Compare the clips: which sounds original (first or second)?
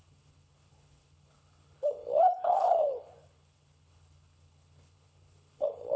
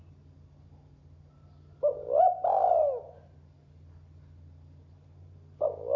second